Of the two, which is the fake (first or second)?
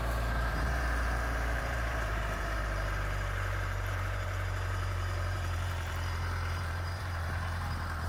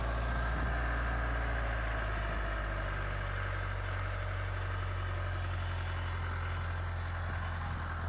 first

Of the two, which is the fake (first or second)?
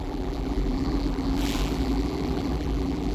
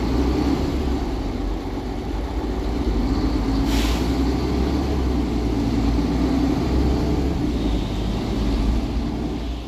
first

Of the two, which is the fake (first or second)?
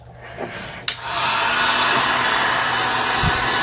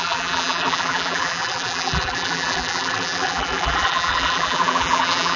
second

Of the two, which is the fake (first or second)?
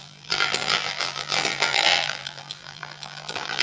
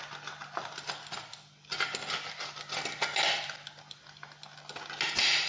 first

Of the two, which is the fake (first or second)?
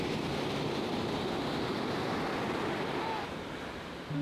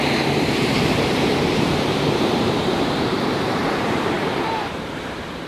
second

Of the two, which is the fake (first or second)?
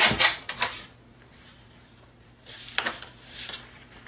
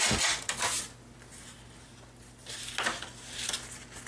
first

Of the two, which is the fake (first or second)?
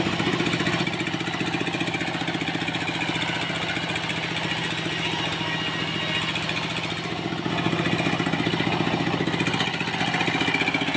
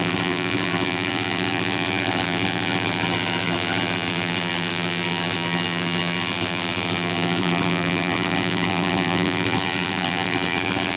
second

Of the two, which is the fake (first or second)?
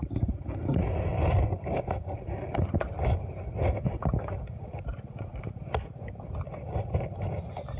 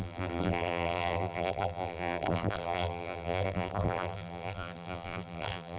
second